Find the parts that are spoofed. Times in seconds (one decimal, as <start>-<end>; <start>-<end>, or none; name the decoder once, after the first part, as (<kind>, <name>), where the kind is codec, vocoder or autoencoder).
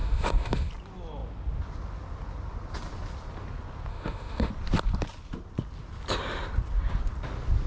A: 0.0-0.7 (autoencoder, DAC-VAE); 3.9-4.5